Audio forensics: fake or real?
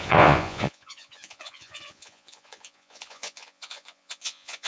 fake